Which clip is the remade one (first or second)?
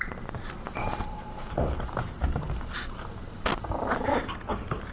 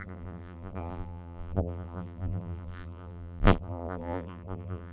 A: second